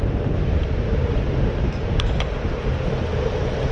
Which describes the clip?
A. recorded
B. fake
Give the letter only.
B